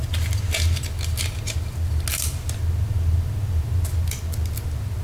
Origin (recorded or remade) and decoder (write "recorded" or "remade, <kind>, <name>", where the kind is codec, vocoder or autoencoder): recorded